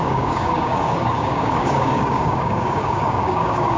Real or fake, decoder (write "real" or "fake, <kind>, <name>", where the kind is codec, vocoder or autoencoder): fake, codec, DAC